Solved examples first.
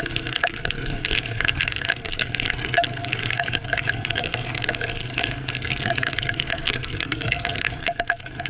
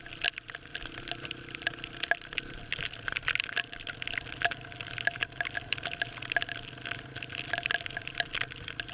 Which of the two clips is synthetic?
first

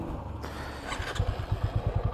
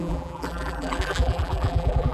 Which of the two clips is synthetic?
second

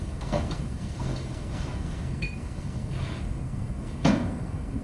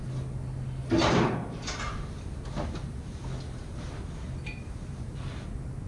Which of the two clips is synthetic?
first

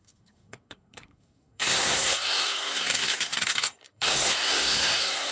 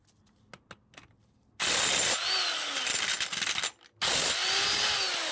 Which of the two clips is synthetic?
first